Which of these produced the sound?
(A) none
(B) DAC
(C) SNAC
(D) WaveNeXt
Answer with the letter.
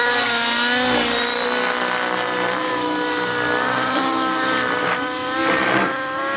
A